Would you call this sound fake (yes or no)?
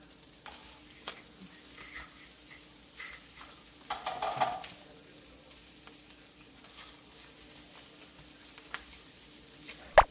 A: no